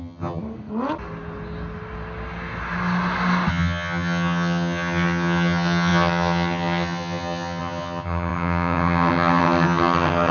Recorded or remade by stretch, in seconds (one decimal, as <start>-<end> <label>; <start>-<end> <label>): 0.0-0.4 remade; 0.4-3.5 recorded; 3.5-10.3 remade